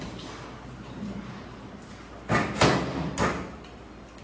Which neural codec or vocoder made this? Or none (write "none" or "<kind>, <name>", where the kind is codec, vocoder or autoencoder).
none